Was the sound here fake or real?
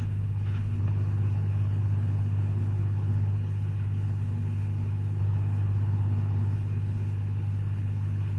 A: fake